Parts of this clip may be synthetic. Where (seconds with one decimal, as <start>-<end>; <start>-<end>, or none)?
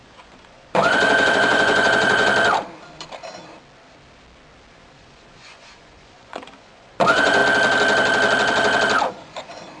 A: 0.0-2.3; 4.7-7.4; 9.1-9.8